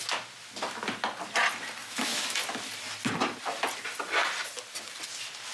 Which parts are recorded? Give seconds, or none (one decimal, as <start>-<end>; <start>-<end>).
0.0-1.8; 2.4-5.5